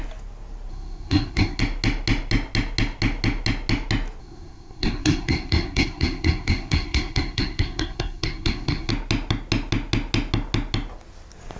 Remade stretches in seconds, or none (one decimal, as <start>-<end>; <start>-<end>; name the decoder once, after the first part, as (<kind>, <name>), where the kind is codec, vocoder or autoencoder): 0.7-1.6 (codec, SNAC); 4.2-8.9